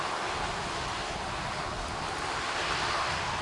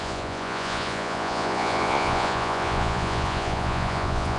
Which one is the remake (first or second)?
second